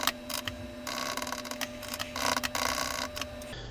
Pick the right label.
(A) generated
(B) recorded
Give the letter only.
B